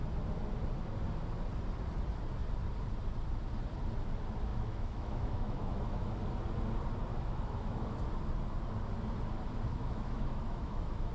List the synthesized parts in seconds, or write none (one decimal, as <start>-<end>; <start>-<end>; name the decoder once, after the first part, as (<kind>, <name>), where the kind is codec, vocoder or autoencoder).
4.5-6.1 (autoencoder, DAC-VAE); 7.1-8.1; 9.7-11.1